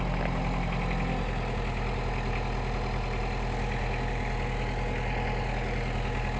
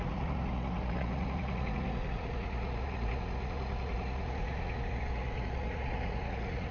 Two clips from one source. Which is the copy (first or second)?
second